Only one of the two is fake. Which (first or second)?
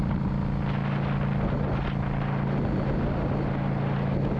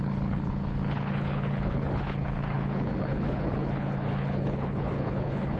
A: second